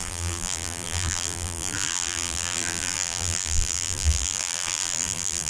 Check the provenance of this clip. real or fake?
fake